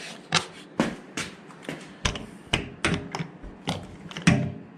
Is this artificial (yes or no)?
no